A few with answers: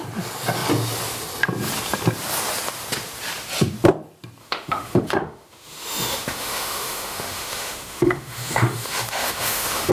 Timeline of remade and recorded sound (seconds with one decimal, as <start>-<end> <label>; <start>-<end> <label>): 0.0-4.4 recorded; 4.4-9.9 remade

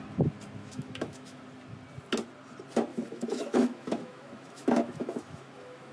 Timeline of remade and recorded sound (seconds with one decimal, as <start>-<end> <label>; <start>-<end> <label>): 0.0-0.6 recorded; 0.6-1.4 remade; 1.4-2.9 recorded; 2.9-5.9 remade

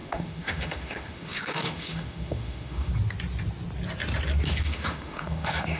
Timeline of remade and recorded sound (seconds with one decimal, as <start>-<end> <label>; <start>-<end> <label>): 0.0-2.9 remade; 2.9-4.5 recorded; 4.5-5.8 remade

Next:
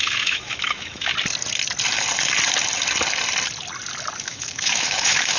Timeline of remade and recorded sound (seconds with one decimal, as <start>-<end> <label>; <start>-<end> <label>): 0.0-1.1 remade; 1.1-4.2 recorded; 4.2-5.4 remade